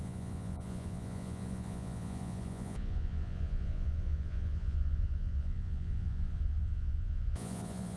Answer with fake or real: fake